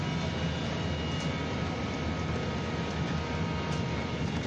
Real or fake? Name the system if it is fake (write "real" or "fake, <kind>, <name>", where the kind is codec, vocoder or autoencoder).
real